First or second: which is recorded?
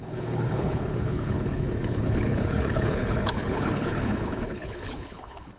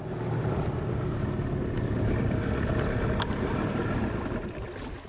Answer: second